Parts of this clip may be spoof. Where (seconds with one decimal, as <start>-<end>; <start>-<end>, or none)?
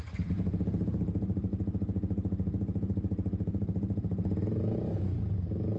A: none